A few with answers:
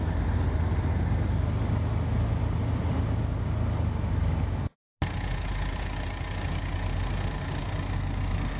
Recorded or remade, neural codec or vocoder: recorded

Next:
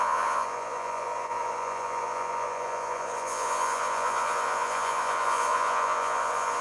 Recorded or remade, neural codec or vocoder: remade, vocoder, Vocos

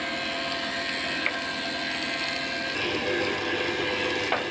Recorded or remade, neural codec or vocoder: recorded